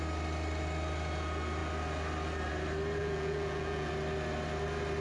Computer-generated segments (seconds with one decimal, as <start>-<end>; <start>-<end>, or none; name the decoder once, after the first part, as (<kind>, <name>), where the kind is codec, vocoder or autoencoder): 3.0-3.9 (vocoder, Vocos)